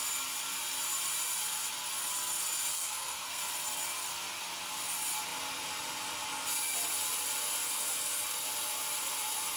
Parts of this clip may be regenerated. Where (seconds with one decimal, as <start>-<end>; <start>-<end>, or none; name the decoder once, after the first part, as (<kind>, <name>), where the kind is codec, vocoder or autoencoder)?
2.7-3.4 (codec, SNAC)